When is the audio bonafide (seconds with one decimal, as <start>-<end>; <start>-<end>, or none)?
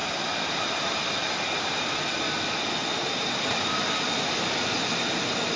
2.3-2.8; 4.9-5.6